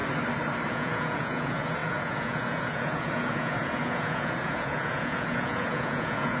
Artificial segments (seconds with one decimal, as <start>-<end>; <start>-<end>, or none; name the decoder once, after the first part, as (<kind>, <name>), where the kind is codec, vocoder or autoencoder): 0.7-6.4 (vocoder, Vocos)